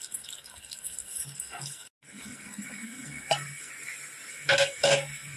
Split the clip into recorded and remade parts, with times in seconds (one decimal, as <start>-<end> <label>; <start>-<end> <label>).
0.0-3.7 remade; 3.7-4.3 recorded; 4.3-5.4 remade